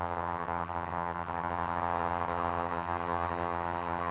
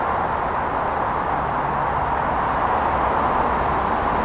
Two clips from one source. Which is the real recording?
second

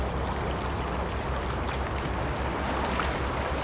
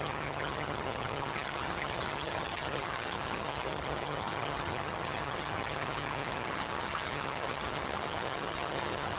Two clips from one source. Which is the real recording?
first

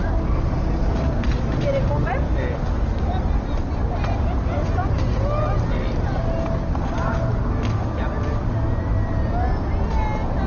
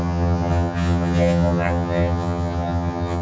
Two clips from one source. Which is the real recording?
first